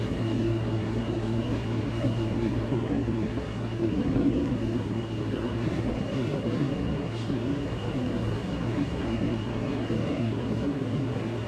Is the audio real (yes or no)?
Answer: no